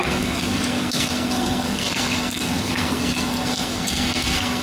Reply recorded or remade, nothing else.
remade